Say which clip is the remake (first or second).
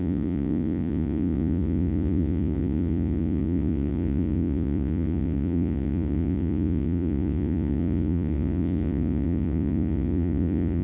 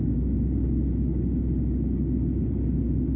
first